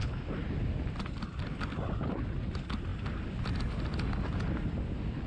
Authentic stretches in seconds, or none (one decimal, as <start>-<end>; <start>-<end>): 0.0-5.3